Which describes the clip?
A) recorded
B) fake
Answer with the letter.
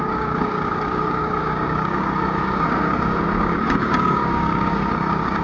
B